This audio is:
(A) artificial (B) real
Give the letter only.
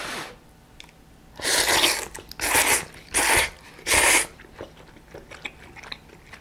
B